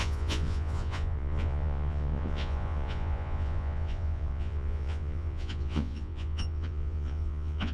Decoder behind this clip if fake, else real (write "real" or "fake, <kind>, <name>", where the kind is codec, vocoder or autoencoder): fake, vocoder, Vocos